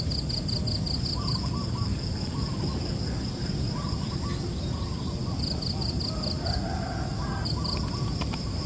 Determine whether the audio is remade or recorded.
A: recorded